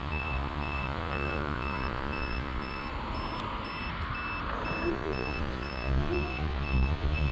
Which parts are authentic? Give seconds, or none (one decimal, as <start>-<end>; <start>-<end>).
2.9-4.9